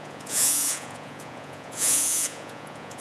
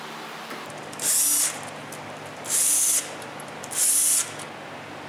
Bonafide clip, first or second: second